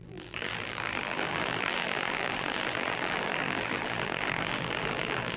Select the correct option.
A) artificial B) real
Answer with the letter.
A